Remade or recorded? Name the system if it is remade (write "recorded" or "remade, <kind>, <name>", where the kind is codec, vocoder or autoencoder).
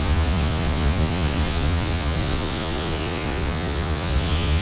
remade, vocoder, Vocos